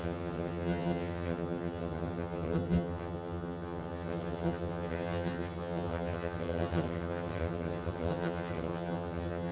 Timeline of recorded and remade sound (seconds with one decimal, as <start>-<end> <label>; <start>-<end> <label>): 0.0-9.5 remade